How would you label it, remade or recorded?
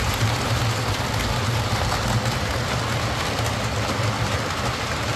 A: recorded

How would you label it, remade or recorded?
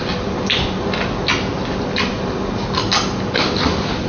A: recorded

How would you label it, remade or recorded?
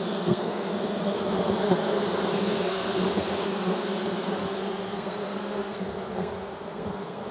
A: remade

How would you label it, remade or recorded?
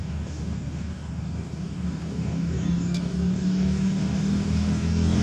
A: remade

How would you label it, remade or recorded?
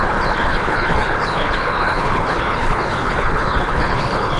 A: remade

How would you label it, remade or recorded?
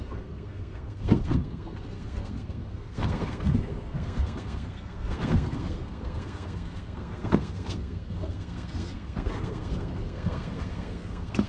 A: remade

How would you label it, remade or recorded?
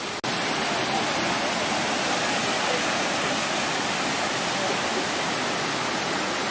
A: recorded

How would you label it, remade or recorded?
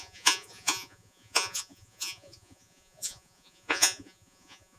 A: remade